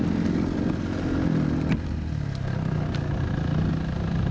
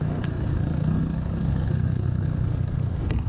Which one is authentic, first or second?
first